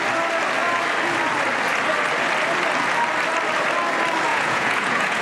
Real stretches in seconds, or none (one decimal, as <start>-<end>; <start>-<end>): 0.0-4.3